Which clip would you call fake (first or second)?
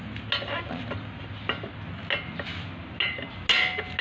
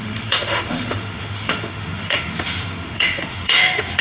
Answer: second